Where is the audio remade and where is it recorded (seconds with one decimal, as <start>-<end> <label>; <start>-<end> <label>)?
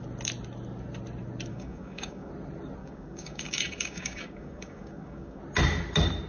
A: 0.0-1.5 recorded; 1.5-2.3 remade; 2.3-2.8 recorded; 2.8-5.4 remade; 5.4-6.3 recorded